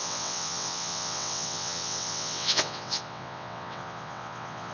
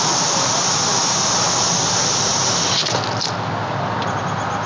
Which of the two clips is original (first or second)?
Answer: second